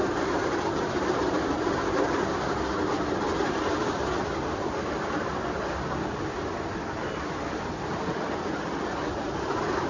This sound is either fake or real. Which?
real